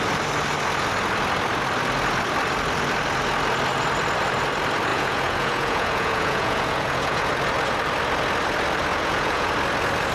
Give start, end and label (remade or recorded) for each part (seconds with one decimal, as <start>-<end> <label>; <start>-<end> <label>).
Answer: 0.0-4.9 recorded; 4.9-7.3 remade; 7.3-8.9 recorded; 8.9-9.5 remade; 9.5-10.1 recorded